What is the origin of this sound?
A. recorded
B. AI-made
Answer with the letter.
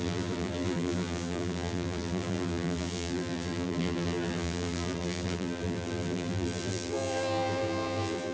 B